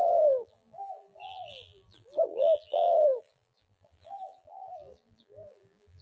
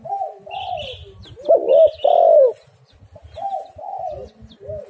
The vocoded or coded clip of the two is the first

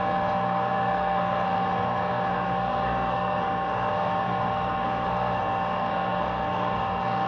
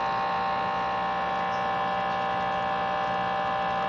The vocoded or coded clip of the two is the first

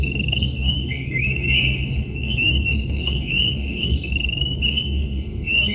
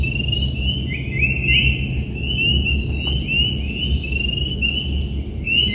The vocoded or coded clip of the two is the first